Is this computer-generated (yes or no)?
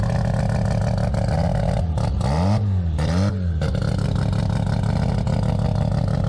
no